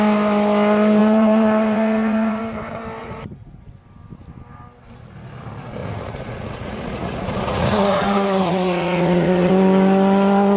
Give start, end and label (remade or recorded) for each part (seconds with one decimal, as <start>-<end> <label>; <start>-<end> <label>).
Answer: 0.0-1.0 recorded; 1.0-2.4 remade; 2.4-3.0 recorded; 3.0-3.6 remade; 3.6-5.8 recorded; 5.8-9.5 remade; 9.5-10.6 recorded